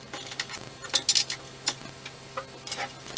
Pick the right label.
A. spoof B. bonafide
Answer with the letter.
B